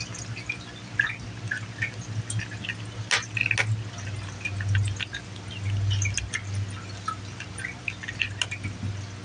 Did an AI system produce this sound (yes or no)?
no